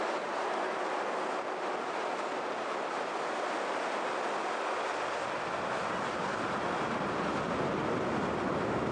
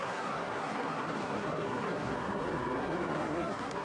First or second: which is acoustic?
first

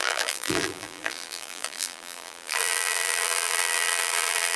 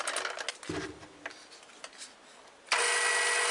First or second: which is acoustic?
second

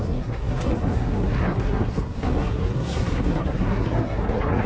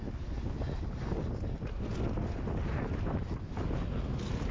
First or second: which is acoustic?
second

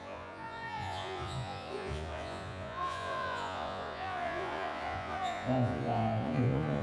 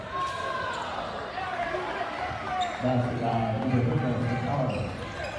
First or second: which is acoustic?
second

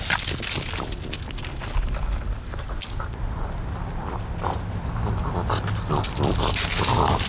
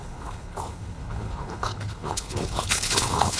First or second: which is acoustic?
first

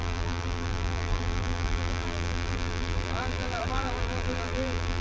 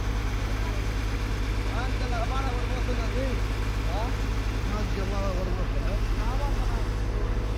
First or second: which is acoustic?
second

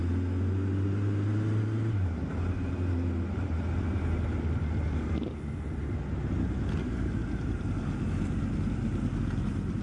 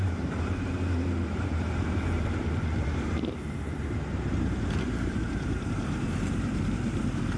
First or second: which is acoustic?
first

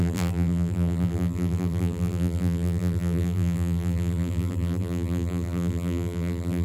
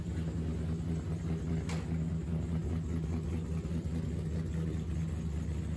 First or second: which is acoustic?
second